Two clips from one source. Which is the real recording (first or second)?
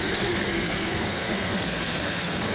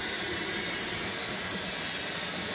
second